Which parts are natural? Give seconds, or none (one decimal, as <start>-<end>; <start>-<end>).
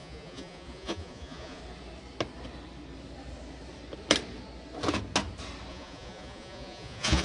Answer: 1.6-5.7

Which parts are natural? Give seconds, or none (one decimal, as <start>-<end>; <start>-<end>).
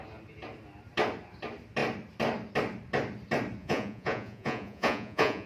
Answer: 0.0-3.6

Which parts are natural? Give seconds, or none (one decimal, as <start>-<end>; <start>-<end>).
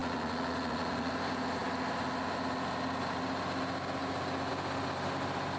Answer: 1.1-5.6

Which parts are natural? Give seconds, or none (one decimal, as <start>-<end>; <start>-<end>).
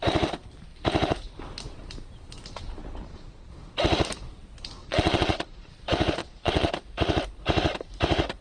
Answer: 0.0-2.8; 3.5-4.8; 5.7-6.2; 6.7-8.4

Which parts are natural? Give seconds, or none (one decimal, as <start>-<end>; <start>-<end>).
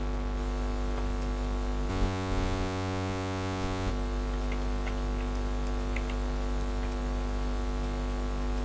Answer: 0.0-1.9; 3.9-8.6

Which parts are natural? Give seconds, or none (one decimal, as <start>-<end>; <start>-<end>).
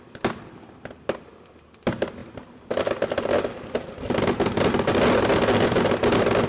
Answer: 0.0-6.5